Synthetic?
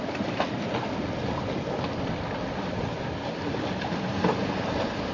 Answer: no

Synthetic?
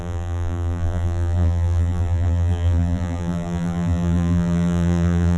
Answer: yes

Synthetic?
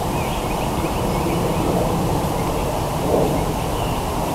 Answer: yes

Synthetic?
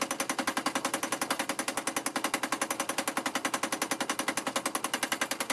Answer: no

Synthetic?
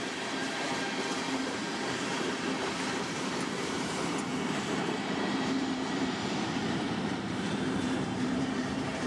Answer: yes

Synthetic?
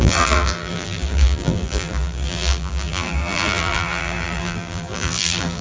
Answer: yes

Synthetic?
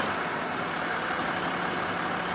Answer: no